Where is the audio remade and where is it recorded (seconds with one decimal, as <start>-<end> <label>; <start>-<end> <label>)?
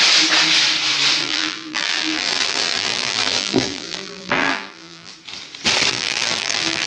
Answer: 0.0-1.2 recorded; 1.2-5.1 remade; 5.1-5.9 recorded; 5.9-6.9 remade